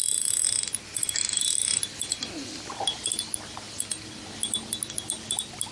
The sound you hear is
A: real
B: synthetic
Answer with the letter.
A